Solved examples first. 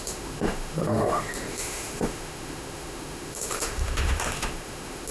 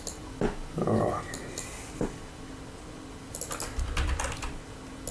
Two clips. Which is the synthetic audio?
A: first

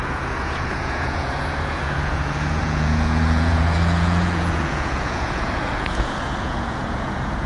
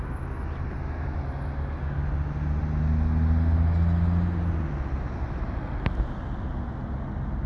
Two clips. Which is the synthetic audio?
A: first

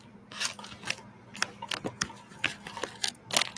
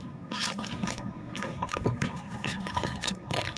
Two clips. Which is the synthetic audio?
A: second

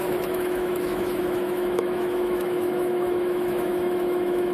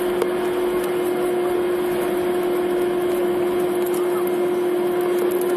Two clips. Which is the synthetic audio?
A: first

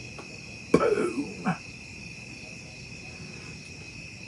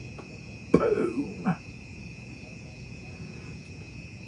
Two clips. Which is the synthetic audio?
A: second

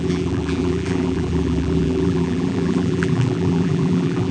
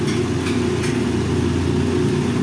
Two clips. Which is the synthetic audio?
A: first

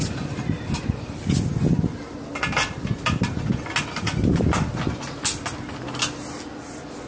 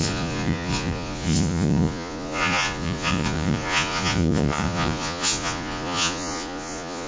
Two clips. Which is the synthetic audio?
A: second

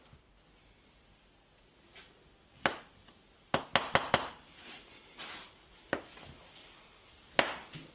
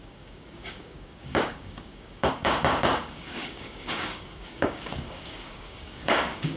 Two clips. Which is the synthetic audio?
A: second